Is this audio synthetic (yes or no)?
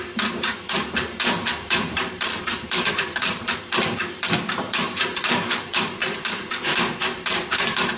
yes